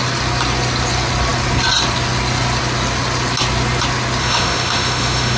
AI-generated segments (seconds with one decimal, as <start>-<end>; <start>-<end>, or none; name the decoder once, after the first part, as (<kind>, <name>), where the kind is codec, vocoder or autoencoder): 4.2-5.4 (autoencoder, DAC-VAE)